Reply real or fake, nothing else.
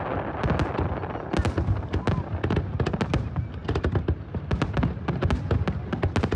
real